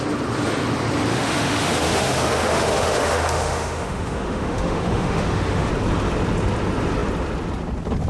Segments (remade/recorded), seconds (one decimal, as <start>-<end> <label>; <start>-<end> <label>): 0.0-1.1 recorded; 1.1-5.7 remade; 5.7-8.1 recorded

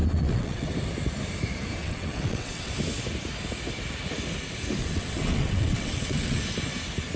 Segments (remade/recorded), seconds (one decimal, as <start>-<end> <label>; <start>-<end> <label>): 0.0-0.7 remade; 0.7-1.8 recorded; 1.8-2.7 remade; 2.7-4.8 recorded; 4.8-6.4 remade; 6.4-7.2 recorded

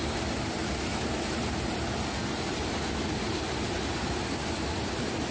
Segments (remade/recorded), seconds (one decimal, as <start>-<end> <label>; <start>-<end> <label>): 0.0-5.3 recorded

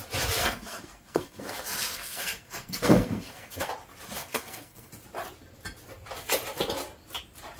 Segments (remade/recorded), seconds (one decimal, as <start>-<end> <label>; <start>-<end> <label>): 0.0-0.4 recorded; 0.4-3.7 remade; 3.7-4.2 recorded; 4.2-4.9 remade; 4.9-7.6 recorded